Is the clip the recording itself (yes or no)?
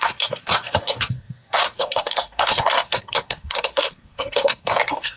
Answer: no